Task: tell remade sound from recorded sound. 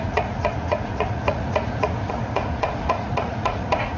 remade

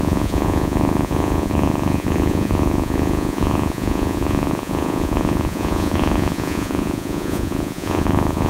remade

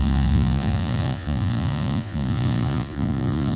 remade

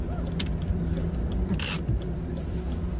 recorded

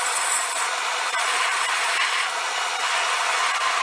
remade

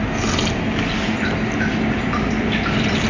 recorded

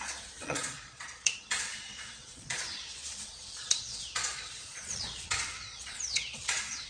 remade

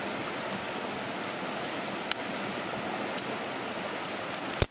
recorded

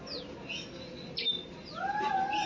recorded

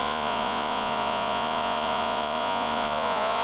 remade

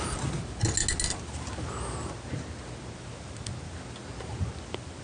recorded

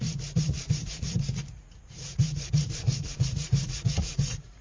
remade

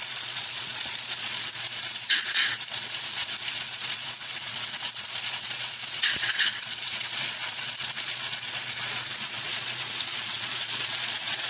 remade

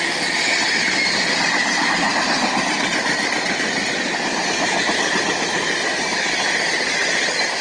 recorded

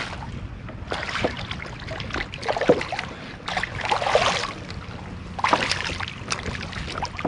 recorded